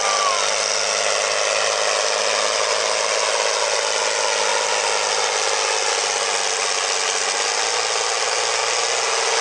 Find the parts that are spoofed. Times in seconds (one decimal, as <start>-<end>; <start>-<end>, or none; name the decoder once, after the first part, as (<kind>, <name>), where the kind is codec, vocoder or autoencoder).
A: none